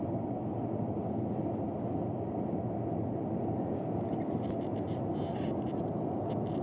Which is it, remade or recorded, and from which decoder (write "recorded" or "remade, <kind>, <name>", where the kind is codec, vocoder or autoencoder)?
recorded